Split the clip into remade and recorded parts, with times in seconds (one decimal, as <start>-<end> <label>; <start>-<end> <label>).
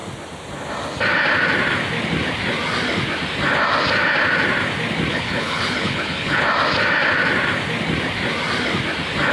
0.0-5.1 recorded; 5.1-6.4 remade; 6.4-9.3 recorded